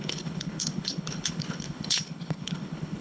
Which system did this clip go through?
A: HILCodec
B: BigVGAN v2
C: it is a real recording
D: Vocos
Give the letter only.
A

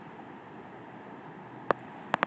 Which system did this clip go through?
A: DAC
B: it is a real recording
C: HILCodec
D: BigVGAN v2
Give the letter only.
B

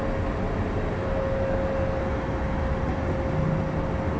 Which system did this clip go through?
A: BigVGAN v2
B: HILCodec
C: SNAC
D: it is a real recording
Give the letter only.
D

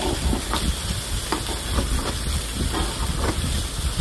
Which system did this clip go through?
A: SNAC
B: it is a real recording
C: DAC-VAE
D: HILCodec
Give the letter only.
B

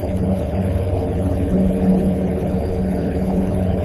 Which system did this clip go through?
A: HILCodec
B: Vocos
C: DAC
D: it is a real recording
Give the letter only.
A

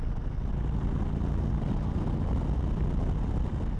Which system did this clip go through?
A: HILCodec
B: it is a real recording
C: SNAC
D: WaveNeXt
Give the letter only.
B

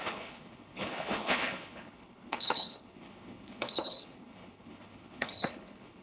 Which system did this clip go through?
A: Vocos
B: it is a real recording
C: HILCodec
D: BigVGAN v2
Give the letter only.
C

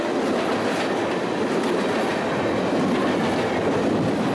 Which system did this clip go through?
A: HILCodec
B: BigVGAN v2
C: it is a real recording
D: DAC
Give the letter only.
C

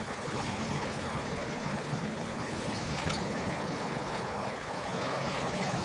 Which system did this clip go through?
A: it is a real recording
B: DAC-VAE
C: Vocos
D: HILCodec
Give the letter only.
D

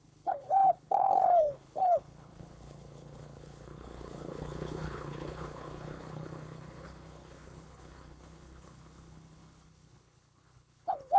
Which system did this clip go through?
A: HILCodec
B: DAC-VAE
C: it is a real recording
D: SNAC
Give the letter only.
A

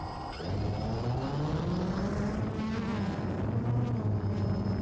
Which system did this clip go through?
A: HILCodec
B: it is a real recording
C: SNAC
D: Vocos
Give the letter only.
B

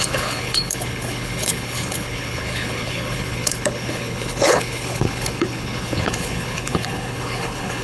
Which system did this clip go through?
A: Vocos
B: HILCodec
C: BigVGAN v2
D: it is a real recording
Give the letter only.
B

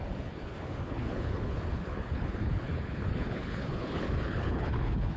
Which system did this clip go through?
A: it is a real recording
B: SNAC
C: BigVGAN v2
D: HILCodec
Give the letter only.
D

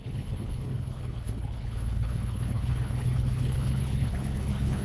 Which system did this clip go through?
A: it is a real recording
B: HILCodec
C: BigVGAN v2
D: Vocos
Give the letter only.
B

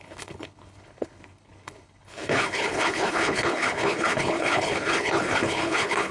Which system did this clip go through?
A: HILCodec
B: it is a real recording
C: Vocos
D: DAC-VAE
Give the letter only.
A